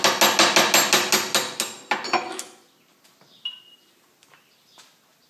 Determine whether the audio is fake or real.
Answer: real